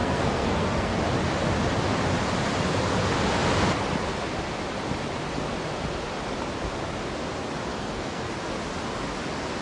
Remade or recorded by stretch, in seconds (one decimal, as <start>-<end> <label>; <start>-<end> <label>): 0.0-1.0 remade; 1.0-7.7 recorded; 7.7-8.3 remade; 8.3-9.6 recorded